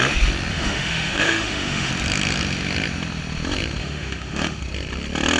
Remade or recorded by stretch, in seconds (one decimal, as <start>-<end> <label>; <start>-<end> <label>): 0.0-0.5 recorded; 0.5-1.9 remade; 1.9-3.8 recorded; 3.8-4.6 remade; 4.6-5.4 recorded